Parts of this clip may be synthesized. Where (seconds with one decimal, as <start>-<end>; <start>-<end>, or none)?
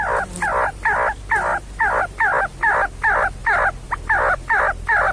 none